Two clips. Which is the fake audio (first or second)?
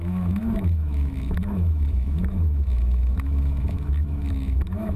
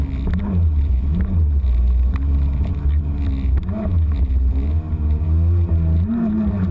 first